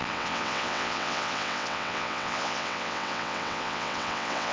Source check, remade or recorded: remade